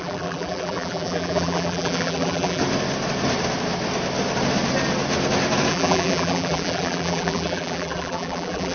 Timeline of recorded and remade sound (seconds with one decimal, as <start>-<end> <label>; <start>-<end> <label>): 0.0-2.6 remade; 2.6-5.7 recorded; 5.7-8.7 remade